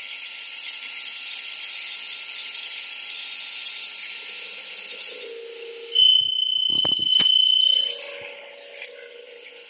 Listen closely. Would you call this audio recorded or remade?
recorded